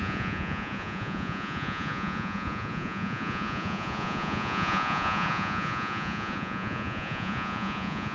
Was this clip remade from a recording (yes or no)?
yes